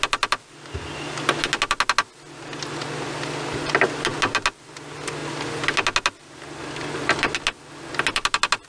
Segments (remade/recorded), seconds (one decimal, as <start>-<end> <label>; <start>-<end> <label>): 0.0-8.7 recorded

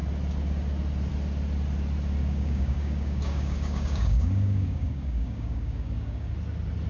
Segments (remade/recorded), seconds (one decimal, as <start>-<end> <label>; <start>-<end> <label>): 0.0-2.2 recorded; 2.2-6.3 remade; 6.3-6.9 recorded